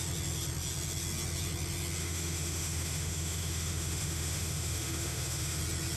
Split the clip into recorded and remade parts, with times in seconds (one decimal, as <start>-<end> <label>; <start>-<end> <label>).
0.0-2.0 recorded; 2.0-5.6 remade; 5.6-6.0 recorded